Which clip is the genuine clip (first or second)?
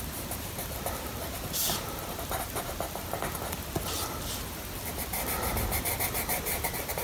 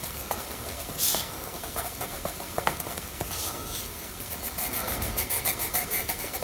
first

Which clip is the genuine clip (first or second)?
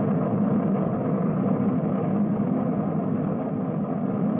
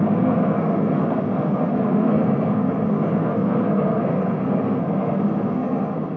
first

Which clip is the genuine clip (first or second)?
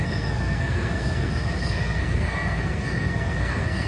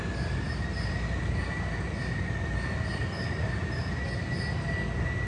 second